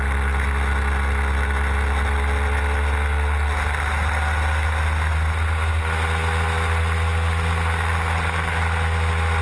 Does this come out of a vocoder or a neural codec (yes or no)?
no